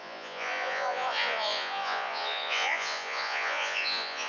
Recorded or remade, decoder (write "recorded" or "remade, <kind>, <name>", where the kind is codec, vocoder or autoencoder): remade, vocoder, Vocos